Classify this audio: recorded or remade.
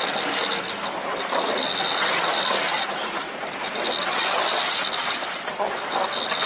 recorded